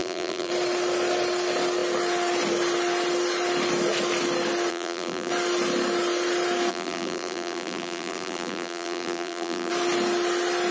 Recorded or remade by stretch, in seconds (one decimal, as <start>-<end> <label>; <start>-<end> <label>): 0.0-0.5 remade; 0.5-4.7 recorded; 4.7-5.3 remade; 5.3-6.7 recorded; 6.7-9.7 remade; 9.7-10.7 recorded